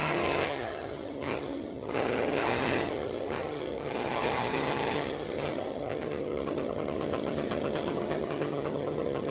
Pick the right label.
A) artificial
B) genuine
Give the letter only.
A